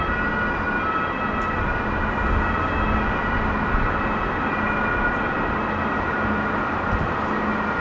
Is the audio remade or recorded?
recorded